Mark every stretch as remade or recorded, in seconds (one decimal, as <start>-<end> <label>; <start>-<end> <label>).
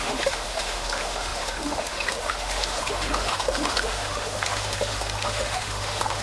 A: 0.0-6.2 remade